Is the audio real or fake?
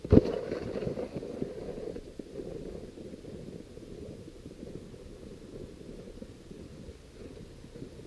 real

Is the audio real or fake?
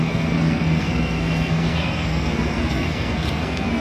fake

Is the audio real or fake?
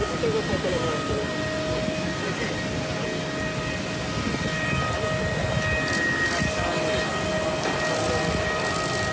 real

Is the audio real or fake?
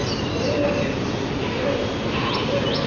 real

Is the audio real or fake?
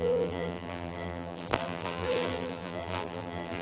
fake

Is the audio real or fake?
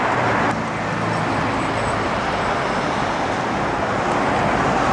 real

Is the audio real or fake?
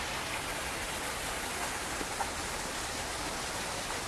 real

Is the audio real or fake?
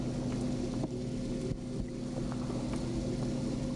real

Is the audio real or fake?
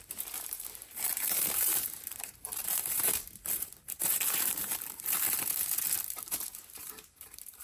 fake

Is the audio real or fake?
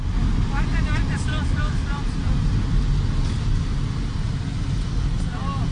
real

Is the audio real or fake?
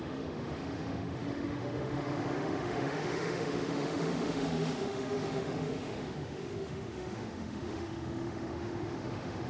fake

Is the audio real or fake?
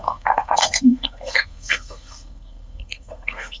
fake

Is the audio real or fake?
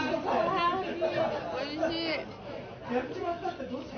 real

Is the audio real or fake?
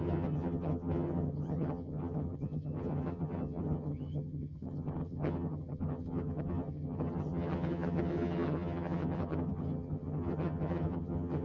fake